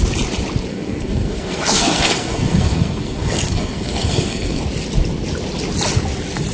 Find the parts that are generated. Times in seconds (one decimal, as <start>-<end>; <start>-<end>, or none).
0.7-4.6

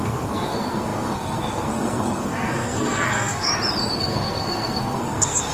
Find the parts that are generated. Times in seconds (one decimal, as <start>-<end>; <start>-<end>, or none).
0.0-3.5; 4.0-5.5